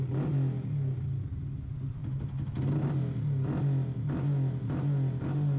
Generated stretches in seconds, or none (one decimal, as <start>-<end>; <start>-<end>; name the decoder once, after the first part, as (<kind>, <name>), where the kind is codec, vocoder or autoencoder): none